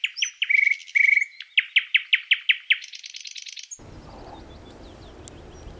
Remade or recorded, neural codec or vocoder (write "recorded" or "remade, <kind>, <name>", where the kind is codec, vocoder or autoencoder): recorded